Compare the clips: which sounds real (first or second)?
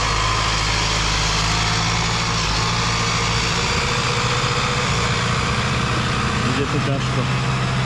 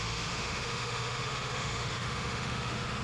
first